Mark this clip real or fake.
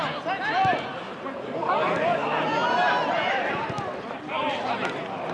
real